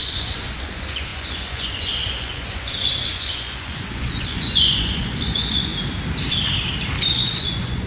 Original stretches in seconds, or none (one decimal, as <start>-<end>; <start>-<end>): 5.7-7.0